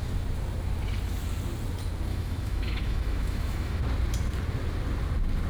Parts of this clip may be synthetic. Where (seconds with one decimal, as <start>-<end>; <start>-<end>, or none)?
2.1-3.8